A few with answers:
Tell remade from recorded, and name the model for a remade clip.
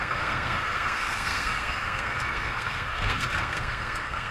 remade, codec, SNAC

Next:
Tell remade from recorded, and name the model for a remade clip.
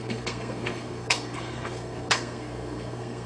remade, codec, SNAC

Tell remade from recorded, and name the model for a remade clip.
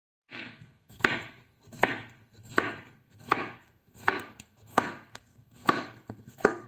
remade, codec, SNAC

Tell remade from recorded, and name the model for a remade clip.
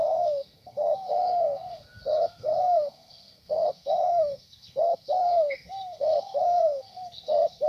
remade, codec, SNAC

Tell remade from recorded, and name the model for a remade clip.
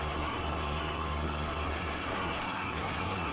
remade, codec, SNAC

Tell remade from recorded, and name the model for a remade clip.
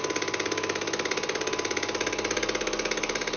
recorded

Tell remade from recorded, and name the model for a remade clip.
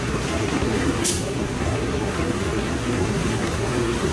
remade, codec, SNAC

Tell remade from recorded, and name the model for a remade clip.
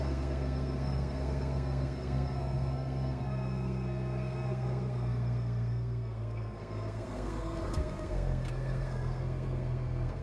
remade, codec, SNAC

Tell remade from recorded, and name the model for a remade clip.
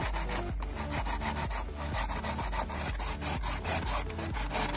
recorded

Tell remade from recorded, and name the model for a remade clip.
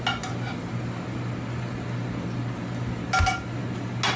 recorded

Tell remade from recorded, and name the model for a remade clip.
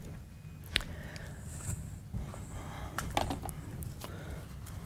recorded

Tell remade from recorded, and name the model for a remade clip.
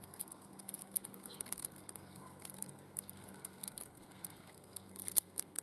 remade, codec, SNAC